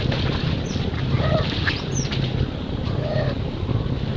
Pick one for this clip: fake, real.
real